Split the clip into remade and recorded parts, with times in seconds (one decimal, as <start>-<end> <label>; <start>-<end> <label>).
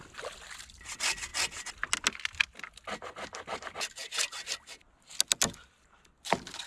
0.0-6.7 recorded